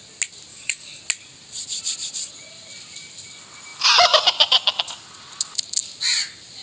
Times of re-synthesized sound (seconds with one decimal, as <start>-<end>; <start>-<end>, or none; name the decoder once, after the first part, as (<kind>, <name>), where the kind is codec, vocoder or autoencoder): 0.5-1.0 (codec, DAC)